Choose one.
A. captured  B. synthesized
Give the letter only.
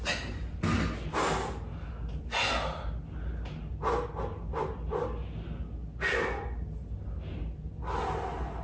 A